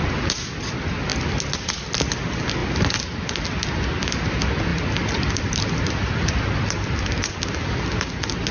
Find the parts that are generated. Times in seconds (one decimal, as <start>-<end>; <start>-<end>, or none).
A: 2.6-3.2; 4.7-7.3